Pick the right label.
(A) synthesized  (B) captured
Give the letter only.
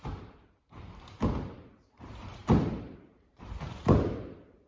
A